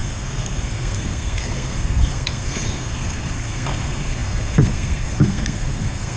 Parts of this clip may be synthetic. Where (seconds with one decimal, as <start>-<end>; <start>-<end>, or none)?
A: 0.0-6.2